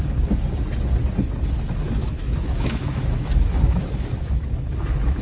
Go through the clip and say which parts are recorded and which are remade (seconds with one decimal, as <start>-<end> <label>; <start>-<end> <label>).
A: 0.0-2.0 recorded; 2.0-5.2 remade